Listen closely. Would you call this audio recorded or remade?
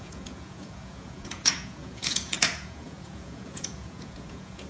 remade